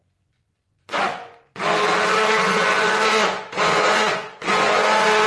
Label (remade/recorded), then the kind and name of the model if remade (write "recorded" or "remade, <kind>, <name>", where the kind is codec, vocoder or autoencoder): remade, vocoder, Vocos